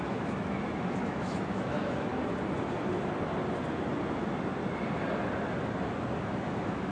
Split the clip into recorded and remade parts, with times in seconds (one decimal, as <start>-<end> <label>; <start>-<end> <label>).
0.0-2.1 remade; 2.1-6.2 recorded; 6.2-6.9 remade